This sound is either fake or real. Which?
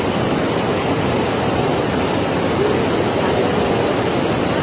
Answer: real